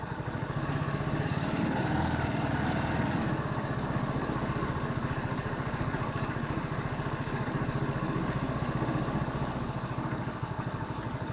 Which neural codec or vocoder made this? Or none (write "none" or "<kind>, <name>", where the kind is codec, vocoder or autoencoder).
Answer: codec, DAC